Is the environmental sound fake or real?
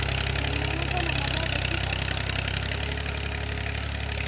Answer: real